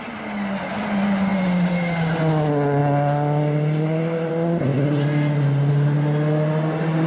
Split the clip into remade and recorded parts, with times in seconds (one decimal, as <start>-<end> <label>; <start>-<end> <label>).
0.0-7.1 recorded